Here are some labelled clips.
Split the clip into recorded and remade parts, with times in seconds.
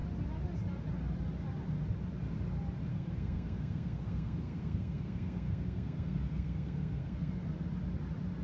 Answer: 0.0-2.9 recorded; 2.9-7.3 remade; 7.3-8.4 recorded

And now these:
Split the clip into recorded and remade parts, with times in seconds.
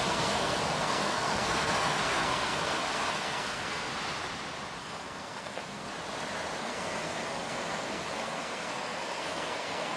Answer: 0.0-3.9 remade; 3.9-4.8 recorded; 4.8-5.9 remade; 5.9-6.6 recorded; 6.6-10.0 remade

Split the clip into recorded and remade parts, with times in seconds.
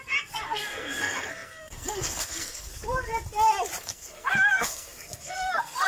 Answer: 0.0-3.1 remade; 3.1-3.8 recorded; 3.8-5.9 remade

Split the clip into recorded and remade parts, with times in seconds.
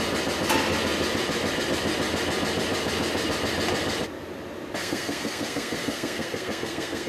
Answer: 0.0-4.8 recorded; 4.8-7.1 remade